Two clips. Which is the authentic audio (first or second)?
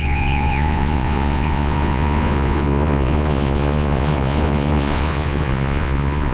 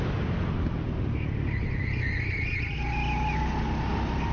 second